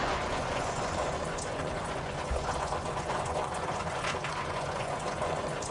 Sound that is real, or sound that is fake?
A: fake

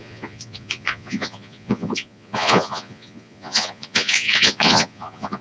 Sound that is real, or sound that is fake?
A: fake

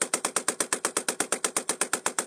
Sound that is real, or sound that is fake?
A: real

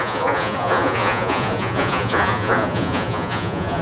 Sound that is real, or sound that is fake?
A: fake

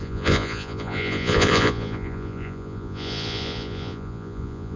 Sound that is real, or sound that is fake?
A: fake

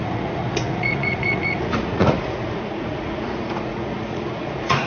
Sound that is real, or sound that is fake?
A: fake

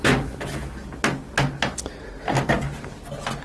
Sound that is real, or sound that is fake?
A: real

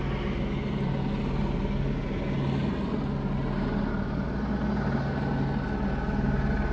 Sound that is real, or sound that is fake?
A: real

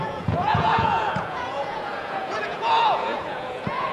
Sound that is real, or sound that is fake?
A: fake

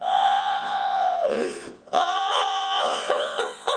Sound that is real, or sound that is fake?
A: fake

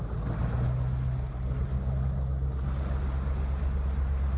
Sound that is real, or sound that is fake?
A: real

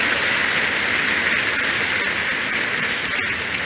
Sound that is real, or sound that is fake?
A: real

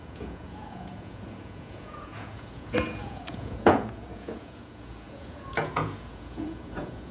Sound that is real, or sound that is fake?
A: fake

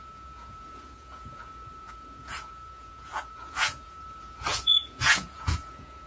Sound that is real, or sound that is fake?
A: fake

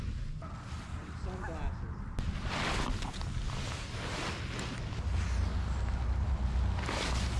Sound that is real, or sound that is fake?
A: real